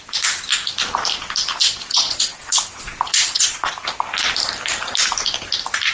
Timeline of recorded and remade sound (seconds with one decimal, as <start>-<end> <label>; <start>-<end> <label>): 0.0-1.6 recorded; 1.6-3.7 remade; 3.7-5.9 recorded